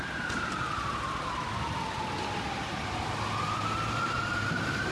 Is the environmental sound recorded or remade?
recorded